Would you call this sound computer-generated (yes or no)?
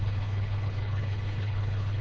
yes